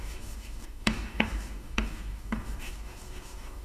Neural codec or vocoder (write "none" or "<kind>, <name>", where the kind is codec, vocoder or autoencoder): codec, DAC